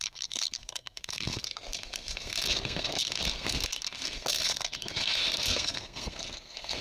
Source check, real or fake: fake